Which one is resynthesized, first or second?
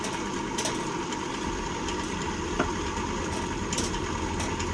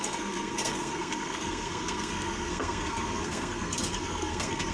second